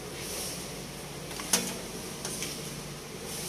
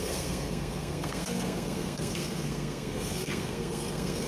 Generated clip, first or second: second